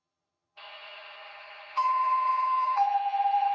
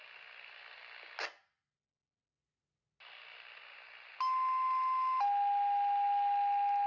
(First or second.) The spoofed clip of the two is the first